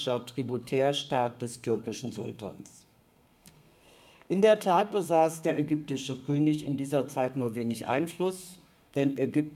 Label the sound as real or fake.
fake